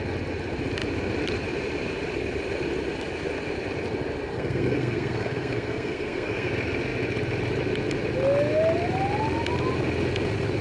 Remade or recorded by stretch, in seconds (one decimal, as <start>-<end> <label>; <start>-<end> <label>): 0.0-4.3 recorded; 4.3-6.5 remade; 6.5-10.6 recorded